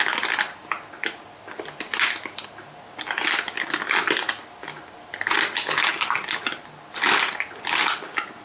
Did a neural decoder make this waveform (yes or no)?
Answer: no